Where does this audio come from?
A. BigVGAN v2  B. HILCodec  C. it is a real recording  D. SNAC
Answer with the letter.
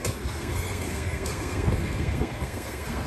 D